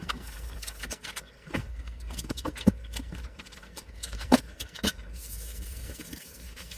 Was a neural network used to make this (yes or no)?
yes